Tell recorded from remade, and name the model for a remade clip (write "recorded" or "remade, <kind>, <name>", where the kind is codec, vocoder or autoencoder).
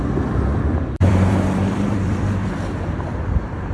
remade, vocoder, BigVGAN v2